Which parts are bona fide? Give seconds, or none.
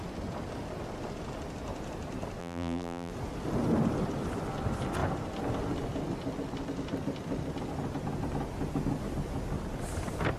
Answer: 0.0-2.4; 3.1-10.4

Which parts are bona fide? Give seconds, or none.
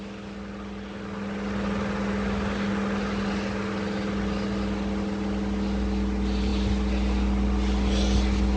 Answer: 0.0-8.6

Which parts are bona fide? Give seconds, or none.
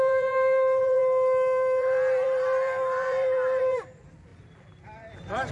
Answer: none